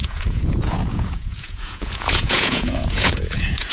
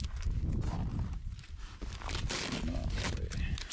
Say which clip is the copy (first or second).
first